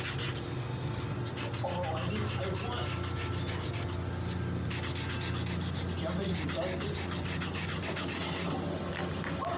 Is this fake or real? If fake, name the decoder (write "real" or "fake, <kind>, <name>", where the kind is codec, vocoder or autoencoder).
real